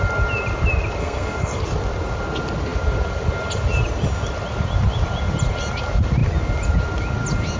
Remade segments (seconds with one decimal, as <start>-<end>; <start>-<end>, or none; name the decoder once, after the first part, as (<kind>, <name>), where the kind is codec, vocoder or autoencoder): 1.0-1.6 (codec, SNAC)